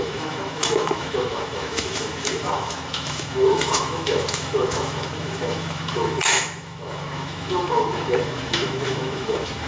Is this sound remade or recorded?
remade